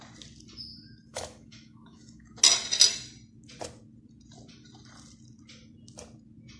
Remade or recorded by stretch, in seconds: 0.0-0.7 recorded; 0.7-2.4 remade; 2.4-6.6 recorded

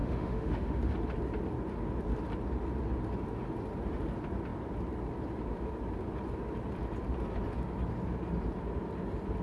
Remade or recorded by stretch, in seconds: 0.0-0.9 remade; 0.9-9.4 recorded

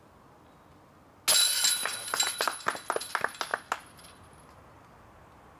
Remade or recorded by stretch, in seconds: 0.0-5.6 recorded

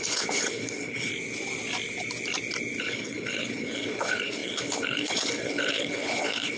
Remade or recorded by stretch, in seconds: 0.0-1.1 remade; 1.1-2.8 recorded; 2.8-6.6 remade